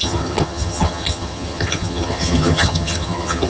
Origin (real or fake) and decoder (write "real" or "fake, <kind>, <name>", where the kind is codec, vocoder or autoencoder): fake, vocoder, HiFi-GAN